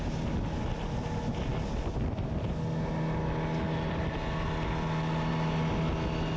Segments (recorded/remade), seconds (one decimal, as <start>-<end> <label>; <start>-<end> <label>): 0.0-6.4 recorded